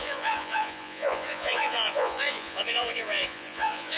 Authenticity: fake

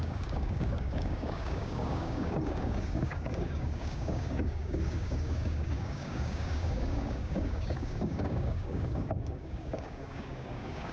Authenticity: fake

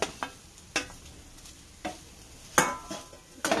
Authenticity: real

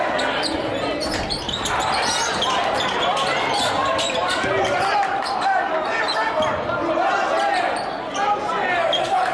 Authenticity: real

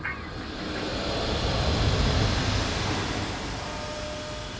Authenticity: real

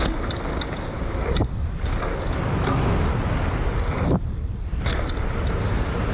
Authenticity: real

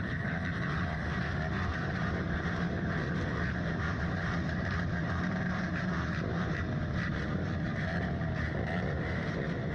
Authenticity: fake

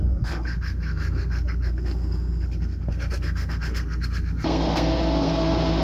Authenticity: fake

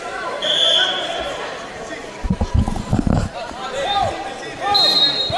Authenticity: fake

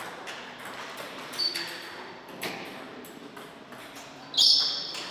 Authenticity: real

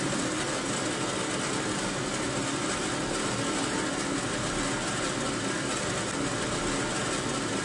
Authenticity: real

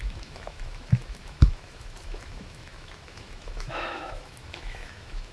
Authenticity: fake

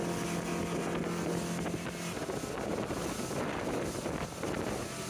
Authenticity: real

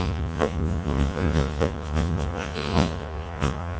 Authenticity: fake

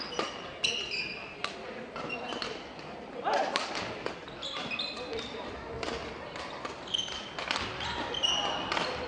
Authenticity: real